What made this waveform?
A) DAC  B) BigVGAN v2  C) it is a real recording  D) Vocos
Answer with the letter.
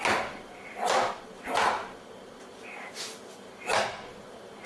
C